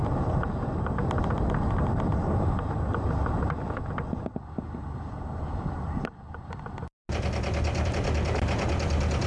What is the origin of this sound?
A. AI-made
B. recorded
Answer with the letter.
B